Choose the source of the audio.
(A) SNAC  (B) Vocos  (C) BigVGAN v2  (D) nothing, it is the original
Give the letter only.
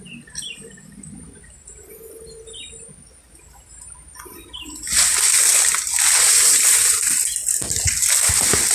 D